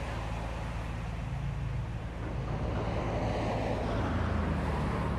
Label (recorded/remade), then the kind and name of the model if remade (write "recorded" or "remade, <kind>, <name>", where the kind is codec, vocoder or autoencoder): recorded